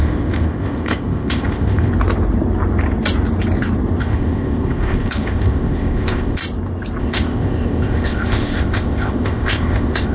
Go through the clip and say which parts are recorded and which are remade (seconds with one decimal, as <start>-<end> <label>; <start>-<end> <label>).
0.0-1.9 remade; 1.9-4.0 recorded; 4.0-6.4 remade; 6.4-7.0 recorded; 7.0-10.1 remade

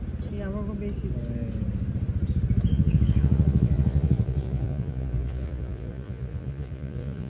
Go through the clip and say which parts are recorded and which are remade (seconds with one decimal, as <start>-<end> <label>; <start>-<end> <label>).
0.0-2.7 recorded; 2.7-7.3 remade

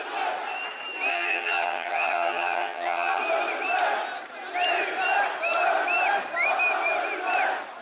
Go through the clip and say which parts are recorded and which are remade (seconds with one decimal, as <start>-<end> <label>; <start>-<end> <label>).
0.0-1.1 recorded; 1.1-3.2 remade; 3.2-7.8 recorded

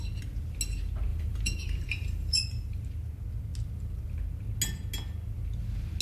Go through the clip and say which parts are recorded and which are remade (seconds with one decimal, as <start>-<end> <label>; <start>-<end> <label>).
0.0-1.1 recorded; 1.1-2.8 remade; 2.8-6.0 recorded